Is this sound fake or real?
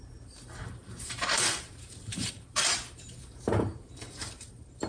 fake